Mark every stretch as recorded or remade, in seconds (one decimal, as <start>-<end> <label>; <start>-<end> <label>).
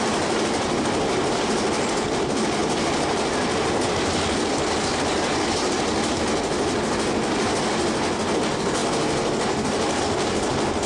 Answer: 0.0-10.9 recorded